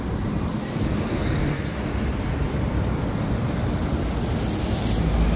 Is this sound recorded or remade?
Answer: recorded